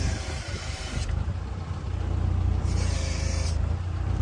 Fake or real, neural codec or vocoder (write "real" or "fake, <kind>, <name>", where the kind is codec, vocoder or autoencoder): fake, vocoder, BigVGAN v2